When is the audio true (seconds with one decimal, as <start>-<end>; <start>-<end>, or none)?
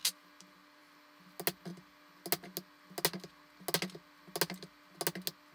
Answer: 0.0-5.5